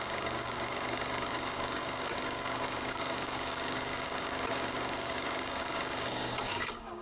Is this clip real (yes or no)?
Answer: no